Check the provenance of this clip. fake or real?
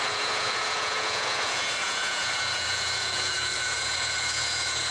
fake